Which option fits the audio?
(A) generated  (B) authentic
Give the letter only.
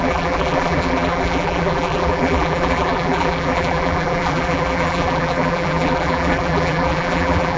A